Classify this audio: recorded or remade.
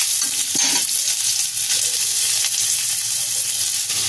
recorded